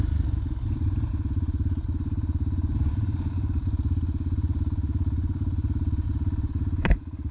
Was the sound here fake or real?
real